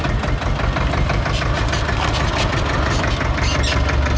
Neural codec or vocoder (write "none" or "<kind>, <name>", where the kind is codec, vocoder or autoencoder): none